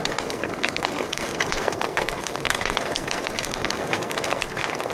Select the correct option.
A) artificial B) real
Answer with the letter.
A